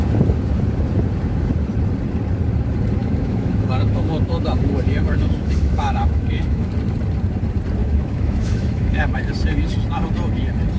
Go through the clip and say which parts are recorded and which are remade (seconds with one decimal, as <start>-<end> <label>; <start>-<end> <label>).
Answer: 0.0-3.0 recorded; 3.0-6.7 remade; 6.7-7.8 recorded; 7.8-9.3 remade; 9.3-10.8 recorded